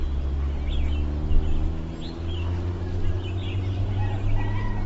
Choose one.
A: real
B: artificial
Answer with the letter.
A